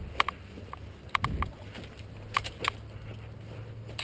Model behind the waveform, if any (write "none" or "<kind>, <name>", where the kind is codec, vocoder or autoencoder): none